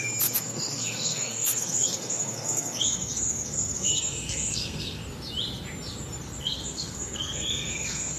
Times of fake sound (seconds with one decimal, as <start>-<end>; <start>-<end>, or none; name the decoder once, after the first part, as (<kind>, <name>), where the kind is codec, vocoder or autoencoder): 0.0-5.0 (codec, SNAC); 6.4-8.2